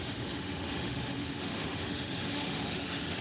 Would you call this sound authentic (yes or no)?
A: no